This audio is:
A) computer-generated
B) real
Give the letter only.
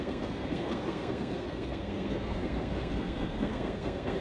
A